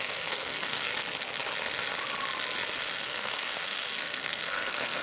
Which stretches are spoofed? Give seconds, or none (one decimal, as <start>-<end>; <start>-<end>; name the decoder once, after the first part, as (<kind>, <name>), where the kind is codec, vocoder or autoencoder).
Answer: 0.0-0.9 (codec, SNAC); 3.0-5.0